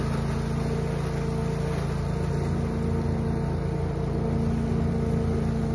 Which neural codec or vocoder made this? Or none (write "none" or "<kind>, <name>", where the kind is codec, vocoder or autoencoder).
none